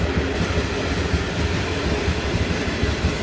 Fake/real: real